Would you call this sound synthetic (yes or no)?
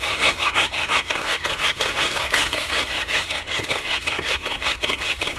yes